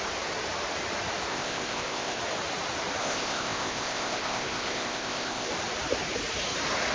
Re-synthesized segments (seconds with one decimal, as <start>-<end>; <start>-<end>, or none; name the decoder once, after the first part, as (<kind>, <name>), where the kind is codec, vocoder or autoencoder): 1.3-2.2 (codec, ZipCodec); 3.0-5.5